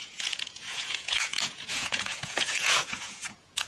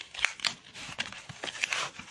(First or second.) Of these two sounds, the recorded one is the second